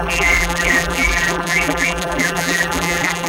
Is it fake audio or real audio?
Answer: fake